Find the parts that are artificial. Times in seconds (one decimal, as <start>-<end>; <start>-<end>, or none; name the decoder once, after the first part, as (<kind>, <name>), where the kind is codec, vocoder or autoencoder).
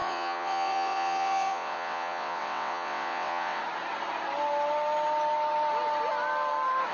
0.0-3.6 (vocoder, WaveNeXt)